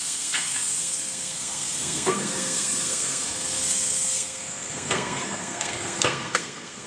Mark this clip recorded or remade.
remade